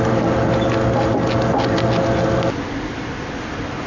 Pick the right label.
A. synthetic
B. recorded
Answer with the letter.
B